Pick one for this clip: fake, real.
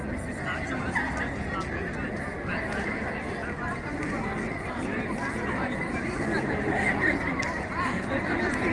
real